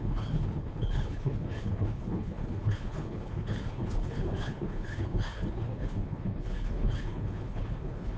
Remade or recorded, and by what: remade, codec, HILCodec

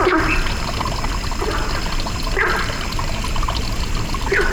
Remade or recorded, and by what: recorded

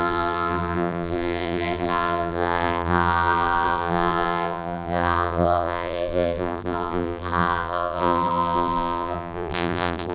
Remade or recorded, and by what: remade, vocoder, BigVGAN v2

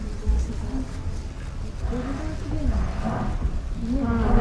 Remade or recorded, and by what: recorded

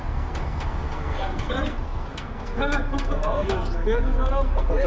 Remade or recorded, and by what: remade, codec, SNAC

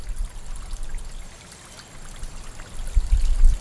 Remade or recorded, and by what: recorded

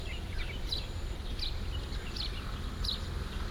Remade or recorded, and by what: recorded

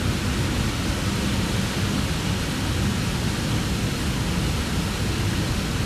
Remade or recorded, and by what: recorded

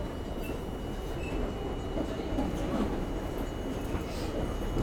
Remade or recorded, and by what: recorded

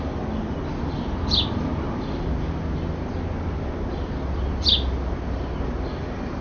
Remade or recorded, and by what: recorded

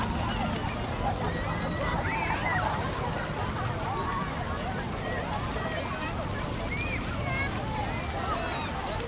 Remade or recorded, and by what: recorded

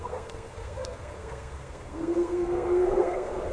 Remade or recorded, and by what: remade, codec, SNAC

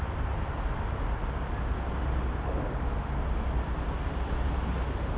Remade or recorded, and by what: recorded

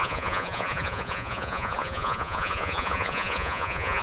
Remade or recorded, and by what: remade, vocoder, Vocos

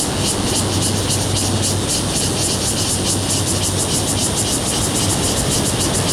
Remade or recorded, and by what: recorded